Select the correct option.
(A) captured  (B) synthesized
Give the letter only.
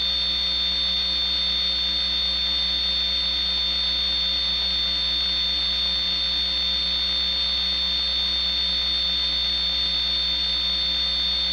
A